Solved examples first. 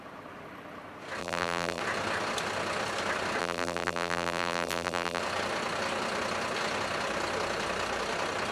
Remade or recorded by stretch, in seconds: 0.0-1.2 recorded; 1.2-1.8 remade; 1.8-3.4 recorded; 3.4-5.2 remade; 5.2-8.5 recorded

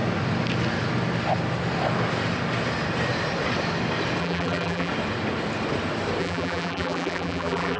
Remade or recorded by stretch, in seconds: 0.0-4.2 recorded; 4.2-4.9 remade; 4.9-6.2 recorded; 6.2-7.8 remade

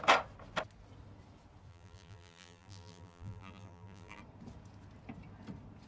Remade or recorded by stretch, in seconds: 0.0-1.7 recorded; 1.7-4.2 remade; 4.2-5.9 recorded

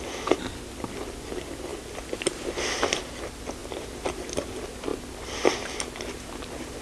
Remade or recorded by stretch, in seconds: 0.0-3.6 recorded; 3.6-4.4 remade; 4.4-4.9 recorded; 4.9-6.3 remade; 6.3-6.8 recorded

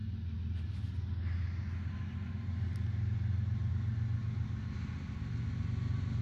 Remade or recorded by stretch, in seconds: 0.0-6.2 recorded